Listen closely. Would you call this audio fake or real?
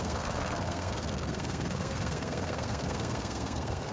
fake